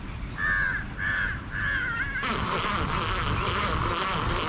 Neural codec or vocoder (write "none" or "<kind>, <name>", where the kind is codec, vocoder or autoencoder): none